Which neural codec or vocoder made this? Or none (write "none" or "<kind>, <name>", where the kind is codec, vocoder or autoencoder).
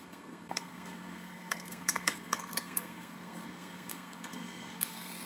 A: codec, SNAC